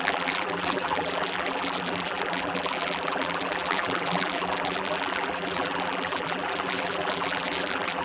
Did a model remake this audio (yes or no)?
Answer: yes